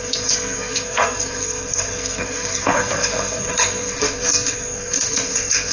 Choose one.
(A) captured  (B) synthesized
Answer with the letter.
B